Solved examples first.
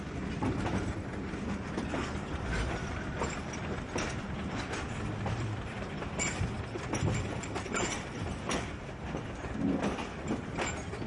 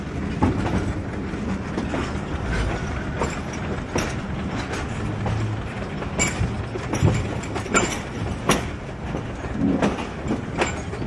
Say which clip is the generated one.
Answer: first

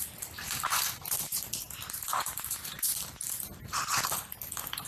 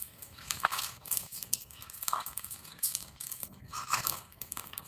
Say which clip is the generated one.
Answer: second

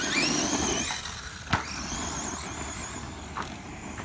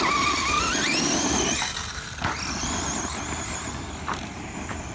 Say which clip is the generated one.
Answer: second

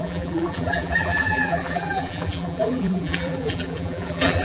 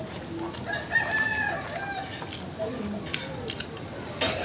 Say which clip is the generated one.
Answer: first